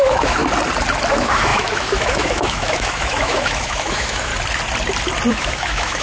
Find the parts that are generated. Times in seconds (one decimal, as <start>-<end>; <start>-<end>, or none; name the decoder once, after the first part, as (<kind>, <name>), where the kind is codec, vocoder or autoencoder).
0.0-0.4 (autoencoder, DAC-VAE); 1.1-4.3; 5.3-6.0